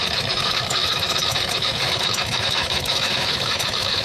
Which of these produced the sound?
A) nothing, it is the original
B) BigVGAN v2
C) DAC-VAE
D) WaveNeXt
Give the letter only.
C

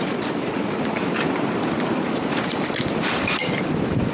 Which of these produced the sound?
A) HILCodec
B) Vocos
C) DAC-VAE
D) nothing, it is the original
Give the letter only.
D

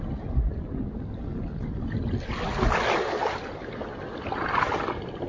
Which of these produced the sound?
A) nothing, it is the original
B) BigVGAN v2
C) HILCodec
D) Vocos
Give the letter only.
A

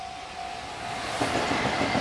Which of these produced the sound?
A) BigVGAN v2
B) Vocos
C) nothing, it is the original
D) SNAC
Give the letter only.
C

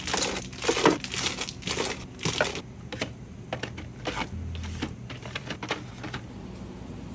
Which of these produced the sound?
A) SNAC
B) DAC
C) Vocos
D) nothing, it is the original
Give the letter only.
D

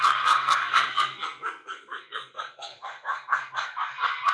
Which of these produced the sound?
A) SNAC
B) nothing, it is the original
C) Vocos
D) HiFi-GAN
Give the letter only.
A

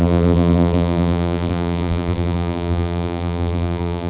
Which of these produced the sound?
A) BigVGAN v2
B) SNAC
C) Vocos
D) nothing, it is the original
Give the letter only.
A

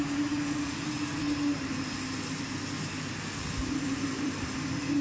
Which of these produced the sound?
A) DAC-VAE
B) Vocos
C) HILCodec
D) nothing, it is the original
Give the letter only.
D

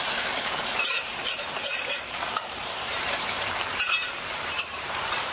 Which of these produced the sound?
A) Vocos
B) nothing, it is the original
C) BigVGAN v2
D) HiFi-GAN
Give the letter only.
C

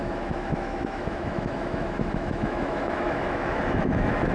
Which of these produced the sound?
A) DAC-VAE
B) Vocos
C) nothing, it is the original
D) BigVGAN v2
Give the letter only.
A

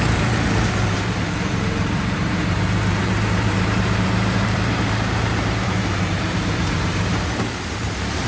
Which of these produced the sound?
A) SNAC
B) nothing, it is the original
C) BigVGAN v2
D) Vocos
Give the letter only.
C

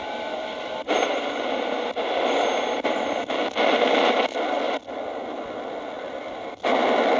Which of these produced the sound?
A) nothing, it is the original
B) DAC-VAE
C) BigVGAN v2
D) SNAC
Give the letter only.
A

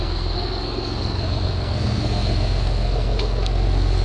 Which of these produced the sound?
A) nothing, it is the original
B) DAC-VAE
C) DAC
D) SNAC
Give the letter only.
D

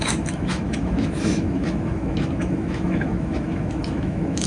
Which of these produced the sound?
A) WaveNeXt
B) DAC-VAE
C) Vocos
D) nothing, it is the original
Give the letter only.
B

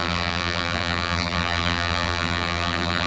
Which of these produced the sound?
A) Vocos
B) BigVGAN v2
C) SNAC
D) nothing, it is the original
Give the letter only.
B